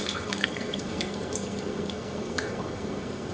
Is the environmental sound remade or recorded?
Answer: remade